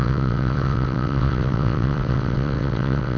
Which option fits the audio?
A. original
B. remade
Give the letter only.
B